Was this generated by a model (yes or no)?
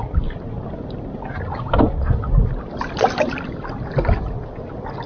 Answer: no